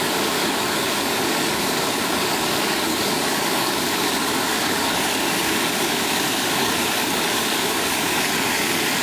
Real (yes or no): no